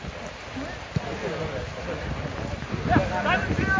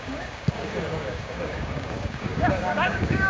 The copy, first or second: second